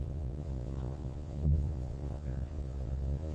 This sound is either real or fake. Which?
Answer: fake